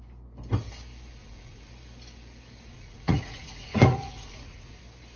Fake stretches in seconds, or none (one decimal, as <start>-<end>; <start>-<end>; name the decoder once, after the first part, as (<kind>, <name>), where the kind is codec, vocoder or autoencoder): 1.2-1.7 (vocoder, Vocos); 2.7-4.8